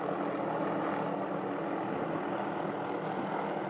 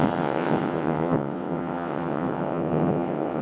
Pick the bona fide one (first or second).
first